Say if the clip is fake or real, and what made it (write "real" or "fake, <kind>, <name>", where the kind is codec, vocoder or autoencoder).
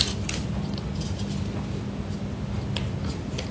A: real